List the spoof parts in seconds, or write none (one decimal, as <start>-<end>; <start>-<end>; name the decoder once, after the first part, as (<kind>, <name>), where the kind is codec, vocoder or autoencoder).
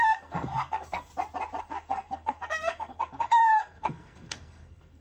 0.0-1.1 (codec, SNAC); 1.6-5.0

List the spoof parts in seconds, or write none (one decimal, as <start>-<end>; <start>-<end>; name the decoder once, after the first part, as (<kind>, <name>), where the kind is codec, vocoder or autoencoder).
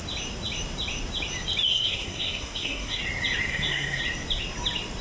1.7-3.0 (codec, SNAC); 3.5-4.0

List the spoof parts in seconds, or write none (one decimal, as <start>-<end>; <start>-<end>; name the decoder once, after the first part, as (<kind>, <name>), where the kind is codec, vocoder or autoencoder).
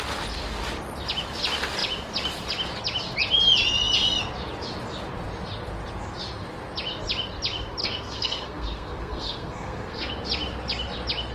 7.8-10.1 (codec, SNAC)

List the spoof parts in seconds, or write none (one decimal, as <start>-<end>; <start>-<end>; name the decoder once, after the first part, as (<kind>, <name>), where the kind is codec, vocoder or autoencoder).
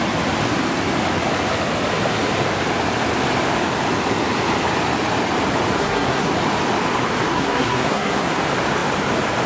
5.8-6.3 (codec, SNAC); 7.3-8.4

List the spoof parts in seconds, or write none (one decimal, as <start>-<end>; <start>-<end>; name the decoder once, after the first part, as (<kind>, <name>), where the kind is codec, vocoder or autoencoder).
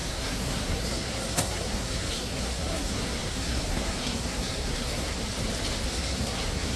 0.0-5.2 (codec, SNAC); 5.9-6.8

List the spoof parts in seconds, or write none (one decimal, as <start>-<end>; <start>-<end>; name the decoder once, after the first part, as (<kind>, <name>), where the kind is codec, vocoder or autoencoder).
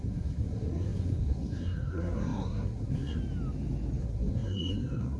0.0-3.2 (codec, SNAC); 4.0-5.2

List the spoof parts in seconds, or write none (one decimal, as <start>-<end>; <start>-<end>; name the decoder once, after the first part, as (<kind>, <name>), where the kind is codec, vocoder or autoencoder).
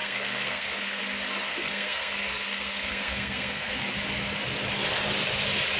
0.0-1.0 (codec, SNAC); 1.5-3.8